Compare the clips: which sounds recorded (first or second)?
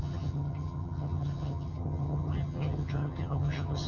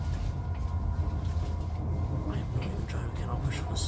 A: second